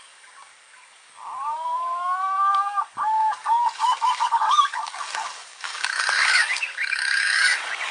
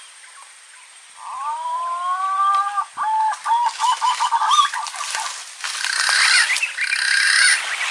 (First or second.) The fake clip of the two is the first